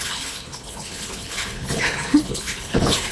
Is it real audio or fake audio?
fake